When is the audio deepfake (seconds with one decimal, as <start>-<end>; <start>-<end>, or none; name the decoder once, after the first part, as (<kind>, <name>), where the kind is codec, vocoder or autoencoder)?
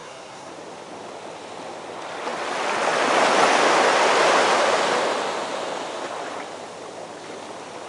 0.0-0.5 (codec, SNAC)